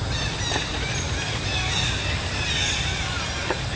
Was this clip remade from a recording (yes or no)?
no